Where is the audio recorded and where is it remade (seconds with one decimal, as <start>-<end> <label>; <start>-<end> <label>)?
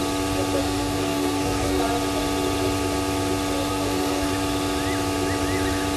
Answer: 0.0-0.6 recorded; 0.6-1.8 remade; 1.8-3.7 recorded; 3.7-4.3 remade; 4.3-6.0 recorded